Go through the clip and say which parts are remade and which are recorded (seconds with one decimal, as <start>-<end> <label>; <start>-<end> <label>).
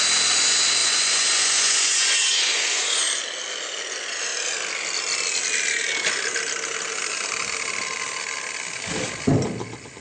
0.0-0.8 recorded; 0.8-3.0 remade; 3.0-10.0 recorded